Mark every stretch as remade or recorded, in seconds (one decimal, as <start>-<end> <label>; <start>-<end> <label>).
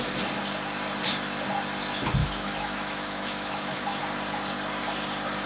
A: 0.0-2.2 recorded; 2.2-4.0 remade; 4.0-5.5 recorded